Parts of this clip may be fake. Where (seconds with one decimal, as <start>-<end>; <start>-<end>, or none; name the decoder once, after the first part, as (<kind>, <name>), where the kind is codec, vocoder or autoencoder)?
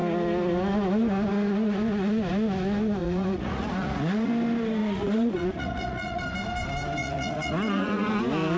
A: 3.0-4.3 (vocoder, Vocos); 4.8-6.2; 7.0-8.2